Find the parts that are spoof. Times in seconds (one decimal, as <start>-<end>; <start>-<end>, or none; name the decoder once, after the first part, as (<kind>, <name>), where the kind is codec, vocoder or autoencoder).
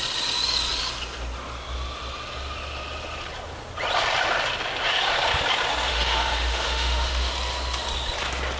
5.9-7.3 (autoencoder, DAC-VAE)